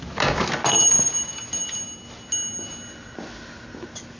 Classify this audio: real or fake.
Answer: real